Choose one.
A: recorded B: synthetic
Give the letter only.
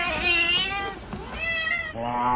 A